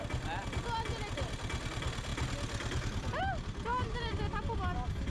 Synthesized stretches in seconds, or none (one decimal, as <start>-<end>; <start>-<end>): 3.7-4.2